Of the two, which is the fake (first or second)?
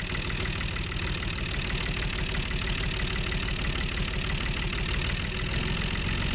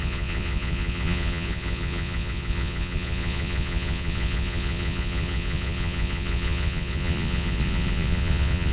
second